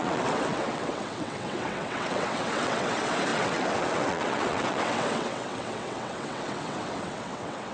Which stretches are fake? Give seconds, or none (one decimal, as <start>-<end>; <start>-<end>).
0.0-7.7